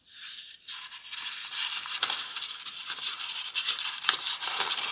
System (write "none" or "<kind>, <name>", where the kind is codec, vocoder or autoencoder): none